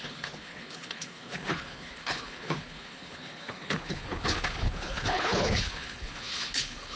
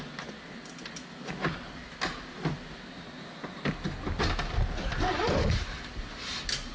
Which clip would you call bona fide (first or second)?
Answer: second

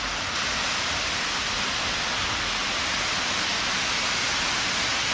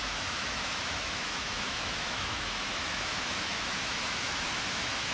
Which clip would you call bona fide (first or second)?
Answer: first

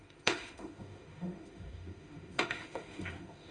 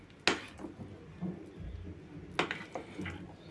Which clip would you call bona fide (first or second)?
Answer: second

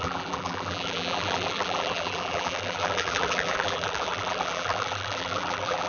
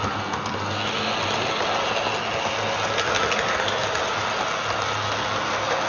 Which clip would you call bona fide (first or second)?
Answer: second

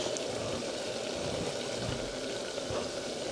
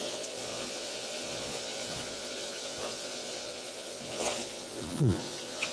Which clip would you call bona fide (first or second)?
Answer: first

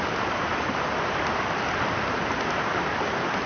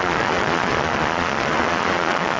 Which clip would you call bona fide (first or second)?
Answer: first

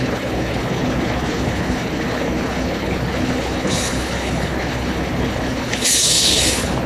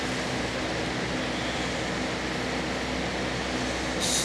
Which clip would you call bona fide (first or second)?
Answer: second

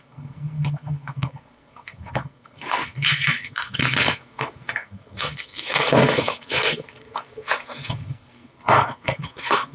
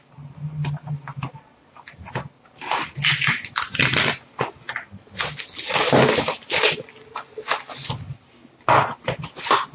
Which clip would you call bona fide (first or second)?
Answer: second